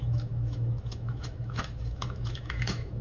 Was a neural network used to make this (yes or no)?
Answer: yes